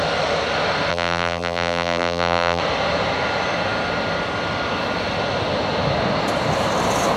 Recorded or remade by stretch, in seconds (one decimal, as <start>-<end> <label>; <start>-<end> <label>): 0.0-0.9 recorded; 0.9-2.6 remade; 2.6-7.2 recorded